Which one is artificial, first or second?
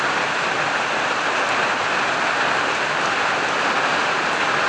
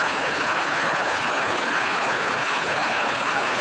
second